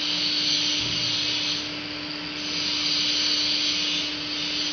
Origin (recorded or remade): recorded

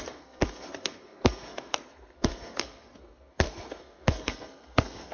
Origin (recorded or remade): remade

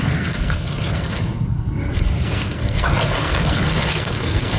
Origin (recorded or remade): remade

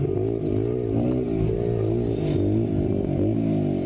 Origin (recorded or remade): recorded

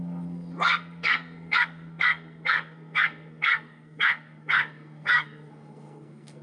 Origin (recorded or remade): remade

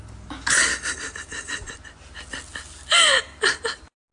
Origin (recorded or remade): recorded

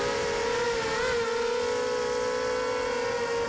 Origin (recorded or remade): recorded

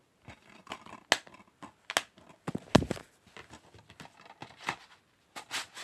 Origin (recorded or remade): recorded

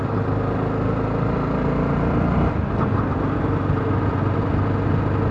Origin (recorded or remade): recorded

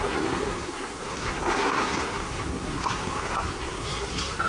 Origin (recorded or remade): remade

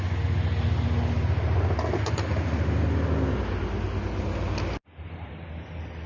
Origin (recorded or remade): recorded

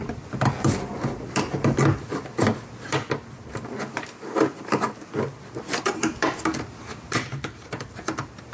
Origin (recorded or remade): recorded